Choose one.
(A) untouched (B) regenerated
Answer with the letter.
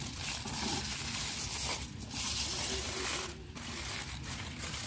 A